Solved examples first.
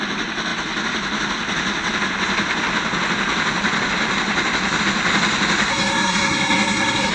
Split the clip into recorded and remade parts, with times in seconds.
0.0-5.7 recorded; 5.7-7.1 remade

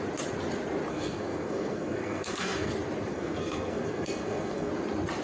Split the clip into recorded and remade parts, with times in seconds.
0.0-0.9 recorded; 0.9-2.7 remade; 2.7-3.1 recorded; 3.1-4.7 remade; 4.7-5.2 recorded